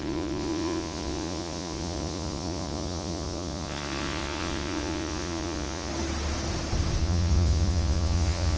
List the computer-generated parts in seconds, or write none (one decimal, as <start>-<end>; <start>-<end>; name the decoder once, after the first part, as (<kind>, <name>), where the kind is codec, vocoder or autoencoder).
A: 0.0-5.9 (vocoder, Vocos); 7.0-8.6